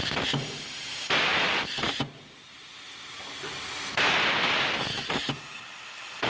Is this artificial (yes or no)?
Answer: no